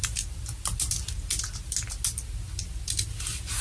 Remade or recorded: recorded